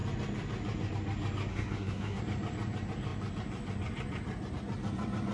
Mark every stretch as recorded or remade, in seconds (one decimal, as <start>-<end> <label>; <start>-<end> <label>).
0.0-1.5 recorded; 1.5-2.2 remade; 2.2-5.3 recorded